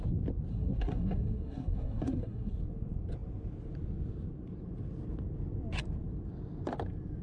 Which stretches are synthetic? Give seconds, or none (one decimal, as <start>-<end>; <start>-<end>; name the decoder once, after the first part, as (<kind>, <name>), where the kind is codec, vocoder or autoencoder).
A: 0.5-2.6 (codec, SNAC)